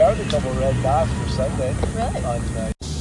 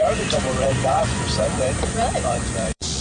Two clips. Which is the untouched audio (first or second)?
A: first